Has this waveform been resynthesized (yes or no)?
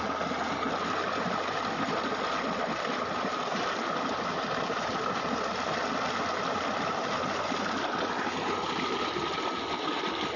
no